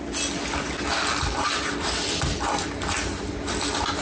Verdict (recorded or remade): recorded